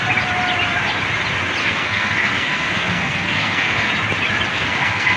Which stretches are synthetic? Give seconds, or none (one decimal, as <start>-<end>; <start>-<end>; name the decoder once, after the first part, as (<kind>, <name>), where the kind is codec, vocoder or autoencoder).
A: 1.6-3.9 (codec, SNAC); 4.5-5.2